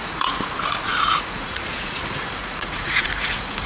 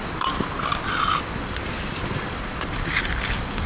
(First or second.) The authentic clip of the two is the second